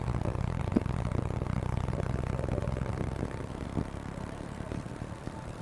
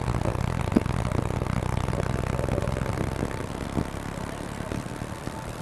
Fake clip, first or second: first